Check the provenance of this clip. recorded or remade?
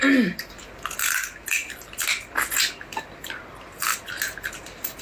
recorded